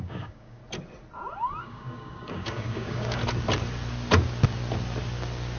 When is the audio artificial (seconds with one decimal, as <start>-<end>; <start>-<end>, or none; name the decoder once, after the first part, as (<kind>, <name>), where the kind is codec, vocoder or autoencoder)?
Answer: 0.0-0.6 (codec, DAC); 1.6-3.2